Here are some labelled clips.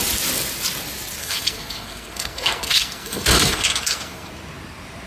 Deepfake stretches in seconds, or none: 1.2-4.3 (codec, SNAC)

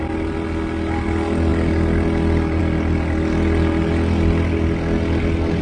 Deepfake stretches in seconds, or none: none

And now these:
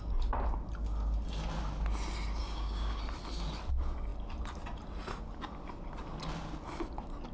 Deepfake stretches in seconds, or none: 2.4-3.0 (codec, DAC)

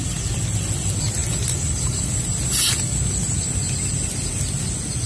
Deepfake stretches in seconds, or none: none

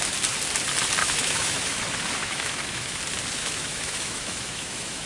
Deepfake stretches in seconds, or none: 1.0-1.8 (autoencoder, DAC-VAE); 2.2-3.0; 3.4-5.1